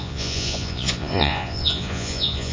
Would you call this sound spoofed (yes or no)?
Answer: yes